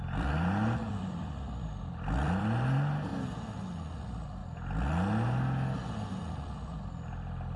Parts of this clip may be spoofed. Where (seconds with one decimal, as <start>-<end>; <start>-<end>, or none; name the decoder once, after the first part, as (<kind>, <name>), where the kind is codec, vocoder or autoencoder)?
0.0-3.1 (vocoder, BigVGAN v2); 3.9-4.4; 6.2-7.6